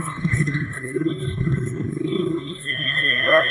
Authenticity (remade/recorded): remade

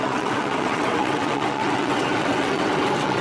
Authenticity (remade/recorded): remade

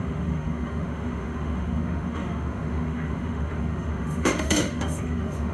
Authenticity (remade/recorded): remade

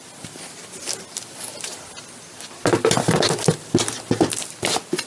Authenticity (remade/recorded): recorded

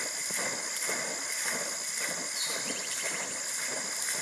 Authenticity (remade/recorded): recorded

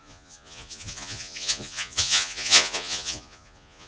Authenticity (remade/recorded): remade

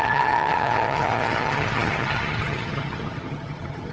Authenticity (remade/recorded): remade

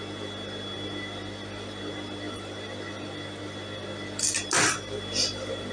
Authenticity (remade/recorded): recorded